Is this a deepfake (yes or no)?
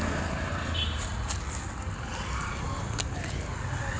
no